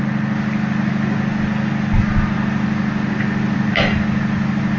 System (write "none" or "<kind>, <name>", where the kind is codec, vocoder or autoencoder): none